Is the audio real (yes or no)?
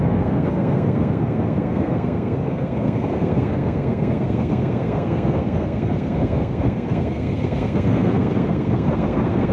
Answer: no